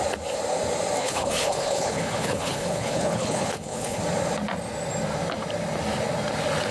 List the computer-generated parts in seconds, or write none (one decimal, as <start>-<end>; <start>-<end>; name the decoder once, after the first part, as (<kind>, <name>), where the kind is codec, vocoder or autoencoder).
1.0-4.0 (codec, HILCodec)